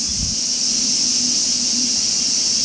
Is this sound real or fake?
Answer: real